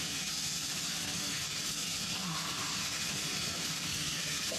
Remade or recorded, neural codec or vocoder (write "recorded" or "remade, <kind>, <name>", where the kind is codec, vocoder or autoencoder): remade, codec, SNAC